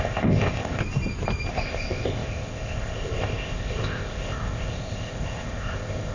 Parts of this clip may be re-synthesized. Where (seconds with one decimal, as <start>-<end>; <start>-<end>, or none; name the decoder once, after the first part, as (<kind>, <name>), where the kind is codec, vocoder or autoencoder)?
0.0-0.8 (codec, ZipCodec); 1.5-6.1